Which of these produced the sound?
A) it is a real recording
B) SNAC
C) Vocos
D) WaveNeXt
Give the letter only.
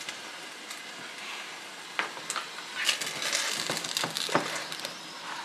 A